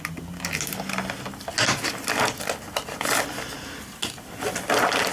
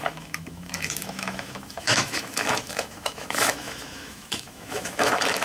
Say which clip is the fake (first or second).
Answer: second